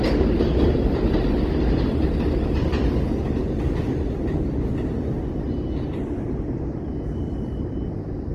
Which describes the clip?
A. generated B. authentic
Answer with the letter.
B